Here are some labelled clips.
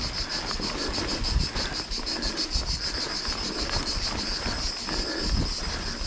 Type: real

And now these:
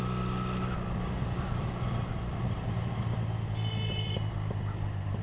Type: real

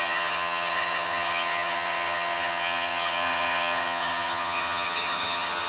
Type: fake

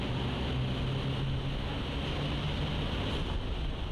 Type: real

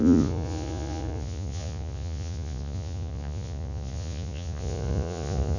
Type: fake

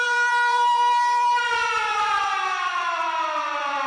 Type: fake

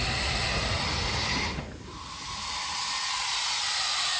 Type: real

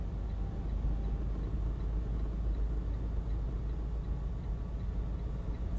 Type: real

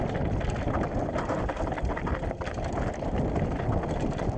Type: real